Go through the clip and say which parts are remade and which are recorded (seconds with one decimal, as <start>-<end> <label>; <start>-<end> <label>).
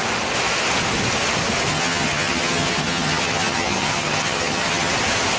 0.0-1.7 recorded; 1.7-4.9 remade; 4.9-5.4 recorded